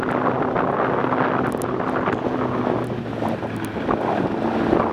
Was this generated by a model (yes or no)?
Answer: no